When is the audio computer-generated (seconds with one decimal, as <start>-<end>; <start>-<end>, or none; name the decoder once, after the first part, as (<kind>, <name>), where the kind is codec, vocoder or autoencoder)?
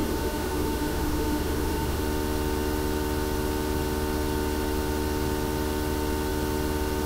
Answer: 0.0-2.0 (autoencoder, DAC-VAE)